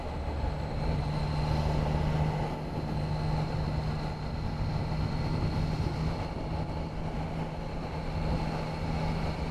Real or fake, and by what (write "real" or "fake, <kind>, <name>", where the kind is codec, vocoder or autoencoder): real